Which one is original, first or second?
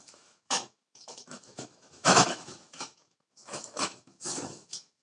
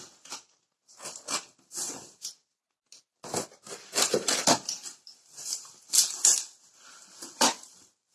second